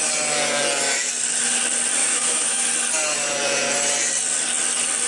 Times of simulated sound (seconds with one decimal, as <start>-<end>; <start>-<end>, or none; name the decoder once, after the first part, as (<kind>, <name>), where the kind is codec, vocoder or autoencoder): 2.0-2.7 (autoencoder, DAC-VAE)